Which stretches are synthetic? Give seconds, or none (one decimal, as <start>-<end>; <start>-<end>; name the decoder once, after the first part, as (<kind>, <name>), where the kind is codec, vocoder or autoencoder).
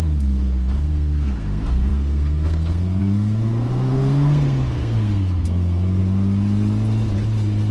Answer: 0.0-6.0 (codec, SNAC)